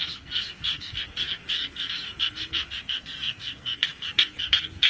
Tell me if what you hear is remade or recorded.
remade